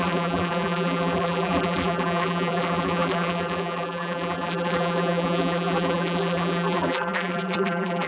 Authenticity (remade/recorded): remade